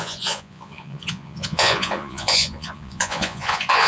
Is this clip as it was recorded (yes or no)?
no